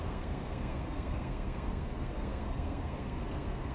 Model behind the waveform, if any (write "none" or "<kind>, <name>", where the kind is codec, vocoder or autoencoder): codec, SNAC